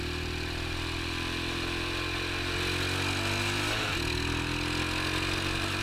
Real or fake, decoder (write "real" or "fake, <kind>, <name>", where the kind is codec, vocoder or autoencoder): real